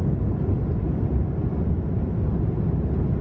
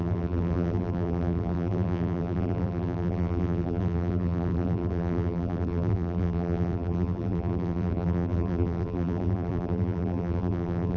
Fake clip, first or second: second